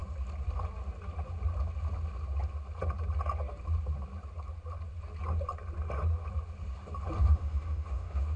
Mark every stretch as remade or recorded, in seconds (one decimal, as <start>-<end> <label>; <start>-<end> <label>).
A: 0.0-7.2 recorded; 7.2-8.4 remade